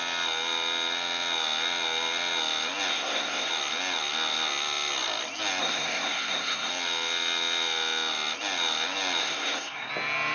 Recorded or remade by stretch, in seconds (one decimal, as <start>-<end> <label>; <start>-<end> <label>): 0.0-2.9 recorded; 2.9-3.5 remade; 3.5-5.6 recorded; 5.6-6.7 remade; 6.7-9.2 recorded; 9.2-9.9 remade; 9.9-10.3 recorded